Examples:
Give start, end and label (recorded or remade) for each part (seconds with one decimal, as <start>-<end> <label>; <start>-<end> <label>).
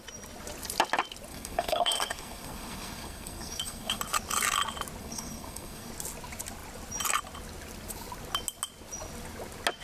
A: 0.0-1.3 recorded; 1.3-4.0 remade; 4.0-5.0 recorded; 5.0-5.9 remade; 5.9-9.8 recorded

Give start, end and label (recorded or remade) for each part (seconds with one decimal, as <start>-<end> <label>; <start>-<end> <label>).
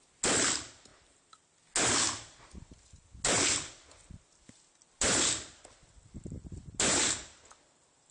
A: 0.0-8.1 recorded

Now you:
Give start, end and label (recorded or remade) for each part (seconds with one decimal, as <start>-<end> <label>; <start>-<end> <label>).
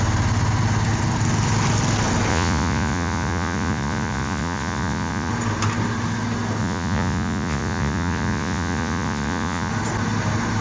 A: 0.0-2.3 recorded; 2.3-5.3 remade; 5.3-6.6 recorded; 6.6-9.7 remade; 9.7-10.6 recorded